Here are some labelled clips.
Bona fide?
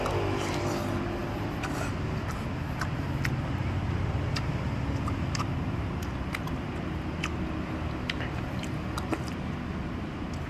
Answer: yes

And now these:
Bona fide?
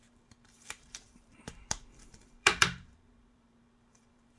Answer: no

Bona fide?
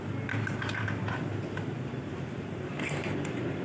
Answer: no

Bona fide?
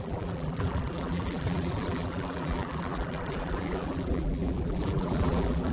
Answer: no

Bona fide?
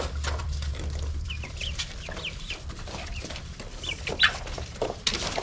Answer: no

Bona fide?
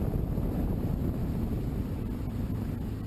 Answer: yes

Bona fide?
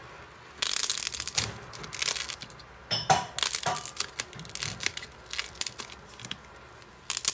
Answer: yes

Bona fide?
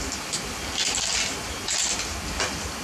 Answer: yes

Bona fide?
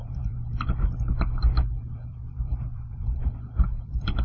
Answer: no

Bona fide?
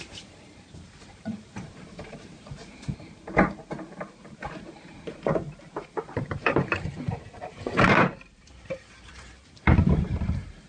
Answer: no